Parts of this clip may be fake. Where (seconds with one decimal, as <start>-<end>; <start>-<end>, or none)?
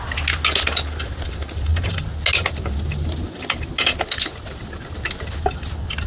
none